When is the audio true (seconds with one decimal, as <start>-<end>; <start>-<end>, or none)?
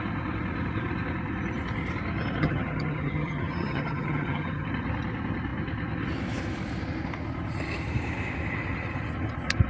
0.0-2.4; 4.7-9.7